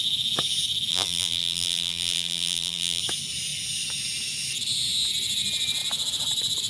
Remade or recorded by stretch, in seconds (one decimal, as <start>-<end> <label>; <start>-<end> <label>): 0.0-0.9 recorded; 0.9-3.0 remade; 3.0-6.7 recorded